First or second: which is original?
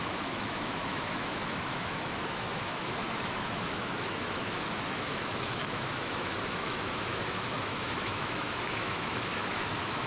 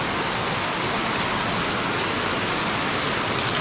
second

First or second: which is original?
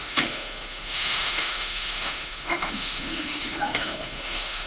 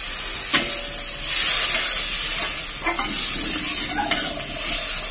second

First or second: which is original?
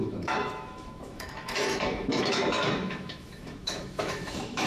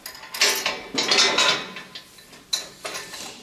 second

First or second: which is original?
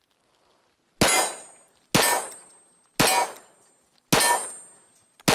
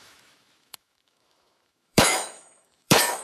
first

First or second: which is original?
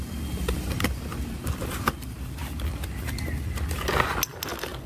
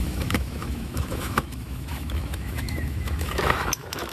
first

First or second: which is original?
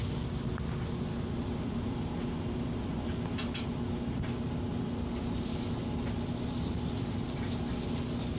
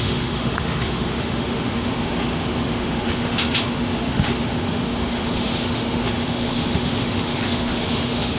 first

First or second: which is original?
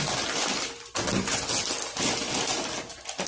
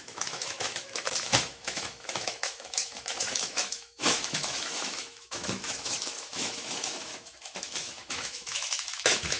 first